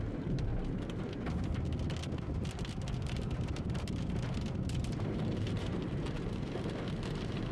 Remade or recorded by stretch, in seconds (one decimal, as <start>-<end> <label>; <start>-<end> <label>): 0.0-0.5 remade; 0.5-3.0 recorded; 3.0-7.5 remade